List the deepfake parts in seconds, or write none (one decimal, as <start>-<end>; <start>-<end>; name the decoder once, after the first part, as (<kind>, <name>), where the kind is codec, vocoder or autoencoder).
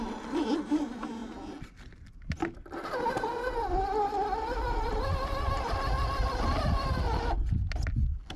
none